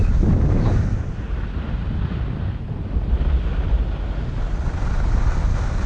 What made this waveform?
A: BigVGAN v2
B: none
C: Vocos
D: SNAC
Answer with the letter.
B